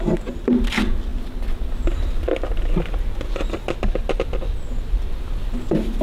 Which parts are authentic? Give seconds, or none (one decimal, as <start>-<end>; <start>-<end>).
0.0-6.0